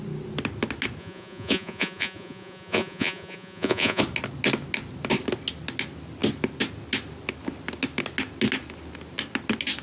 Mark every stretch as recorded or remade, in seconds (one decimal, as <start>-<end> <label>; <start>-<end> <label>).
0.0-1.0 recorded; 1.0-4.0 remade; 4.0-9.8 recorded